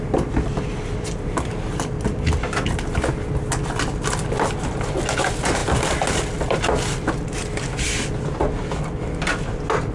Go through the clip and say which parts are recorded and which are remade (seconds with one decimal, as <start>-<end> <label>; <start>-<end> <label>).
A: 0.0-9.9 recorded